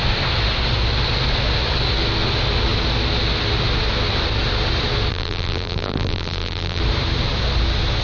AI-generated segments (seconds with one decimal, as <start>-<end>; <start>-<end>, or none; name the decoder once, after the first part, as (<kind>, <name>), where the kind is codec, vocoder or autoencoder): 5.1-6.8 (vocoder, BigVGAN v2)